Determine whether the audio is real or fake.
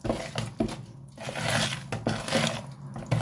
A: real